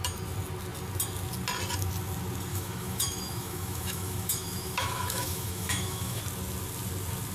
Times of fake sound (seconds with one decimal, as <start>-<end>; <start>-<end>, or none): 2.5-6.2